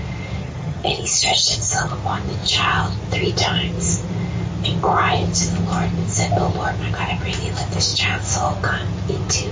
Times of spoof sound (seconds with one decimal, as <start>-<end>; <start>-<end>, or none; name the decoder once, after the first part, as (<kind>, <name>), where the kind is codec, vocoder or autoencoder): 0.4-1.9 (vocoder, HiFi-GAN)